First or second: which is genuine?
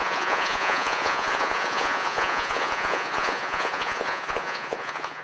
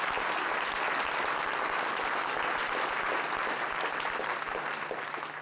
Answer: second